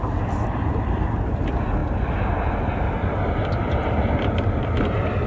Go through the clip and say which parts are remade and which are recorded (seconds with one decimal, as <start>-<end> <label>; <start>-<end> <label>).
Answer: 0.0-5.3 recorded